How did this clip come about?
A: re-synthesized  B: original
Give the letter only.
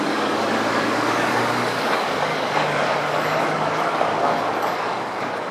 A